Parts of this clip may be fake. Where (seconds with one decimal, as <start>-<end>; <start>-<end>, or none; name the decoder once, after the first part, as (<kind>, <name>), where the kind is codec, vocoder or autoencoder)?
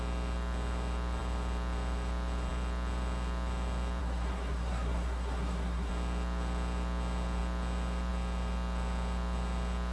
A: 4.0-5.9 (codec, SNAC)